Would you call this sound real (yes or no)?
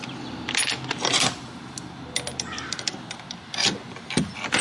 yes